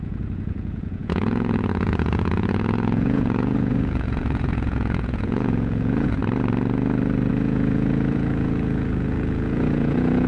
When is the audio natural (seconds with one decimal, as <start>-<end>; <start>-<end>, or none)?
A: 6.2-7.3